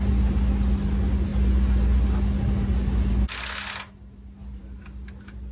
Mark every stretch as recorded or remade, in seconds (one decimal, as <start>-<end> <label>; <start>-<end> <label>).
0.0-5.5 recorded